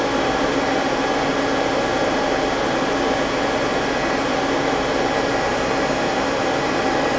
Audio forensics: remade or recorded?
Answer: recorded